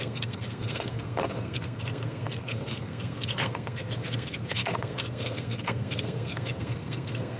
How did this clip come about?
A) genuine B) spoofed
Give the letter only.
B